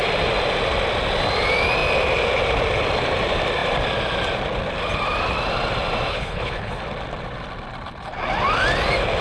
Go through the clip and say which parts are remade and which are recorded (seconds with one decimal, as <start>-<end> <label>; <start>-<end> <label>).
0.0-6.1 recorded; 6.1-6.8 remade; 6.8-9.2 recorded